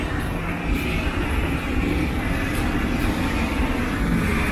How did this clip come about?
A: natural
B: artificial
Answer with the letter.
A